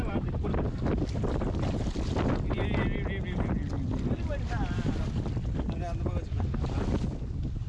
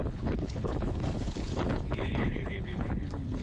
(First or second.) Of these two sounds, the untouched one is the first